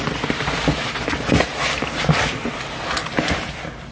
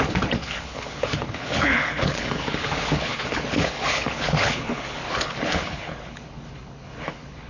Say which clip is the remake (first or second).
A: second